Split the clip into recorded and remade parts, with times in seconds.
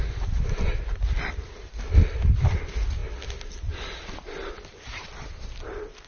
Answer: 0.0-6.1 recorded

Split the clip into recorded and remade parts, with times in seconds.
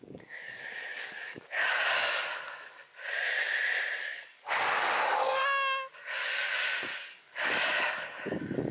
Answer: 0.0-2.9 remade; 2.9-4.0 recorded; 4.0-5.4 remade; 5.4-6.0 recorded; 6.0-8.7 remade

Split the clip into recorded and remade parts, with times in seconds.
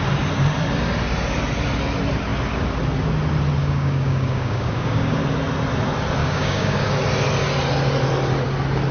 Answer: 0.0-3.6 recorded; 3.6-5.2 remade; 5.2-6.2 recorded; 6.2-6.9 remade; 6.9-8.9 recorded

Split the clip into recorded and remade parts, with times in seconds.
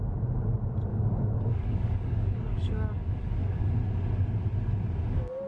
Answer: 0.0-0.9 recorded; 0.9-3.7 remade; 3.7-5.5 recorded